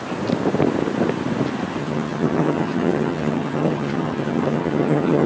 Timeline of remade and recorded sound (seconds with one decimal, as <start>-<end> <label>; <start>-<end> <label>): 0.0-1.8 recorded; 1.8-5.3 remade